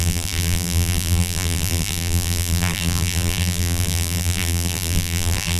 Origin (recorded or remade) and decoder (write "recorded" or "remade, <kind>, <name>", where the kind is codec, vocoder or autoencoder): remade, vocoder, BigVGAN v2